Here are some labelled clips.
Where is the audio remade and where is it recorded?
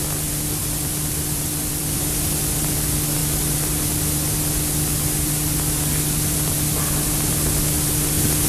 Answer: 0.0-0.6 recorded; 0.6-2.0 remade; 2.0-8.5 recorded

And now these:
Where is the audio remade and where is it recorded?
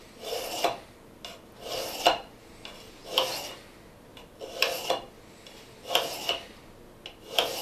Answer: 0.0-7.6 recorded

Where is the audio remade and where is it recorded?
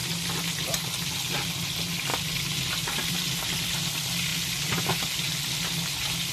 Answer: 0.0-6.3 recorded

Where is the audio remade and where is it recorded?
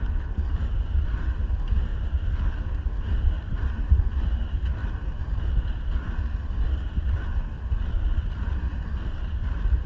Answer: 0.0-1.9 remade; 1.9-3.8 recorded; 3.8-4.8 remade; 4.8-6.8 recorded; 6.8-9.9 remade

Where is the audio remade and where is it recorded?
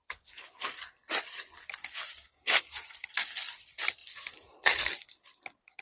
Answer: 0.0-5.8 recorded